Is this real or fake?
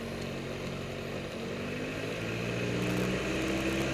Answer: real